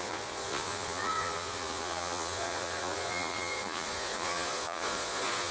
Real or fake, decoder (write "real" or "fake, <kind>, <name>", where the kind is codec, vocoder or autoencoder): fake, vocoder, Vocos